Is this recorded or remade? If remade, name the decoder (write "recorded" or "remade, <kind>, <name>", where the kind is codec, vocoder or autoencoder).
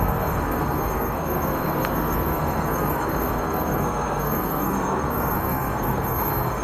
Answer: remade, codec, SNAC